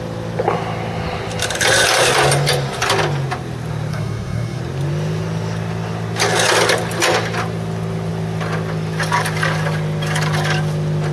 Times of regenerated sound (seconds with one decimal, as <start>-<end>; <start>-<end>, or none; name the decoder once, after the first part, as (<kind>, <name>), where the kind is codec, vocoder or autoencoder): 3.9-4.6 (codec, SNAC)